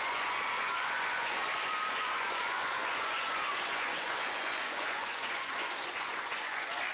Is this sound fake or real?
fake